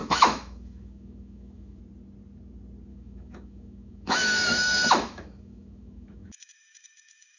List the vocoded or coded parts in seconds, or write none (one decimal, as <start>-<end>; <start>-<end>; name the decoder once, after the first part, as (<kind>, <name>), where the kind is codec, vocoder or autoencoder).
0.0-1.8 (autoencoder, DAC-VAE); 2.9-7.4